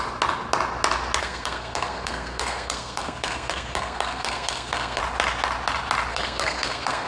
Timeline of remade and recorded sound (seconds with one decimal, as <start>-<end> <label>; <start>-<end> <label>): 0.0-1.2 recorded; 1.2-5.0 remade; 5.0-6.1 recorded; 6.1-7.1 remade